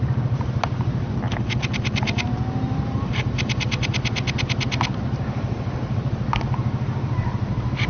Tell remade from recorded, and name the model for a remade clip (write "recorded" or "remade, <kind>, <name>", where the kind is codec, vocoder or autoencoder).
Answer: recorded